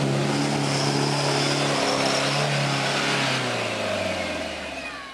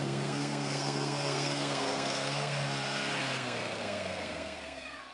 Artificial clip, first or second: second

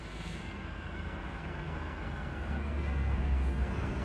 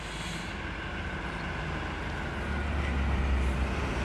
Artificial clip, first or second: first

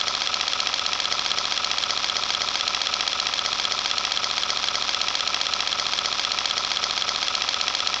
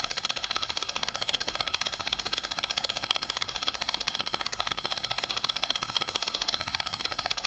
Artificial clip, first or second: second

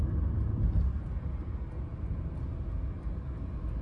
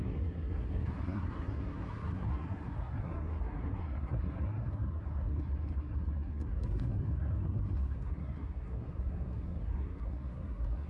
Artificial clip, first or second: second